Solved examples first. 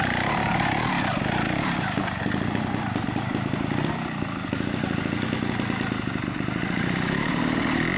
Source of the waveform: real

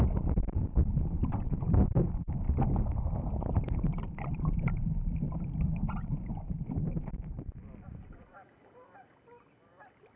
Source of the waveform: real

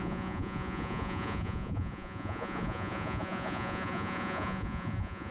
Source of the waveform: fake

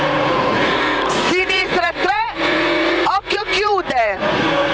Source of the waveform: fake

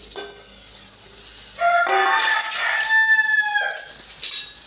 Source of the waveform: real